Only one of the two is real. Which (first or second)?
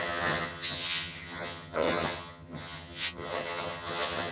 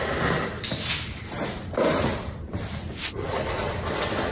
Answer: second